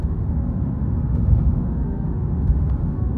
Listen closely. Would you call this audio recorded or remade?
remade